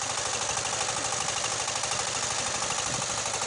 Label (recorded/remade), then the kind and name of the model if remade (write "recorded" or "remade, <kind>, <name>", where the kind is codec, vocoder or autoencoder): recorded